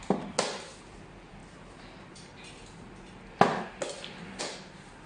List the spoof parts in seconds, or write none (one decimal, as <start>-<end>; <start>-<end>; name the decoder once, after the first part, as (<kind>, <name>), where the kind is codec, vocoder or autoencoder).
none